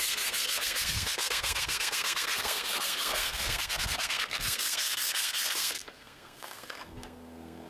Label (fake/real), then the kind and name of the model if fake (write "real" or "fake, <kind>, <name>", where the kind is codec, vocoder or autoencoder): fake, codec, SNAC